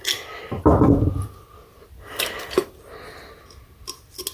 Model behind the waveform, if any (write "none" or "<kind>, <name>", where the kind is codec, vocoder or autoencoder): none